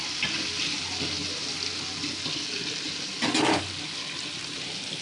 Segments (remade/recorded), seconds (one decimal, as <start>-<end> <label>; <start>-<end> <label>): 0.0-5.0 recorded